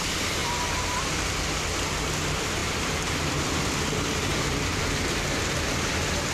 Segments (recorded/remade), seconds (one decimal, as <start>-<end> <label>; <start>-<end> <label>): 0.0-6.3 remade